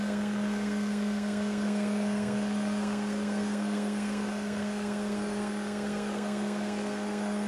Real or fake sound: fake